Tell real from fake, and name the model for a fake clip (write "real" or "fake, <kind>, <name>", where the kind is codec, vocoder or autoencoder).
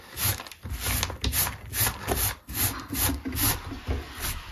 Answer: real